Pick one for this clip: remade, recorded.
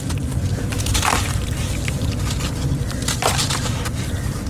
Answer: recorded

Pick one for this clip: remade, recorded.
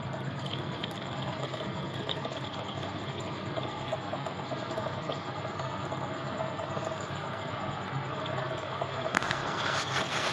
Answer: remade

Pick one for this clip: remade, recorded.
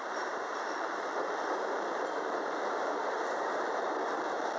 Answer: remade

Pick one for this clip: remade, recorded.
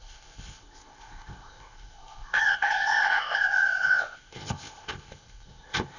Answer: remade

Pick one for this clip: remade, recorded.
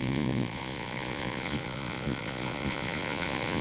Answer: remade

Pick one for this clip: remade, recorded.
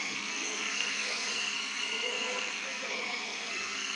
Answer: remade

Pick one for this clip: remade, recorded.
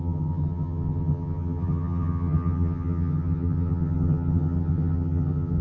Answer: remade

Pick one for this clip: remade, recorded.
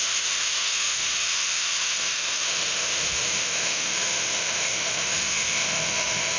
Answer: remade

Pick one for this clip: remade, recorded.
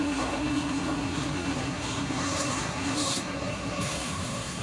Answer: remade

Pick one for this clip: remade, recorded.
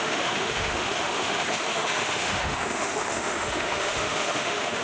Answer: remade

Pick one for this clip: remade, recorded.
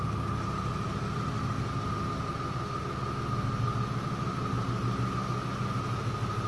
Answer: recorded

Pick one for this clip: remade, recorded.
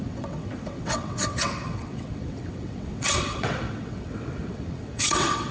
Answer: remade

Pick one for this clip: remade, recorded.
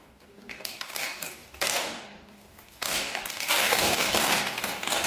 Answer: remade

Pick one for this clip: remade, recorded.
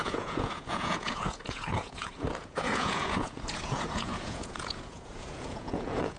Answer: remade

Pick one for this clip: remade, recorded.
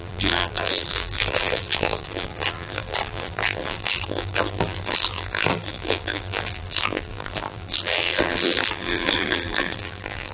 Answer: remade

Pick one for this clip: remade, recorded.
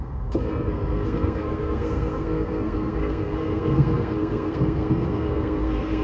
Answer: remade